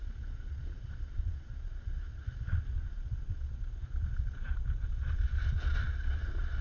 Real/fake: fake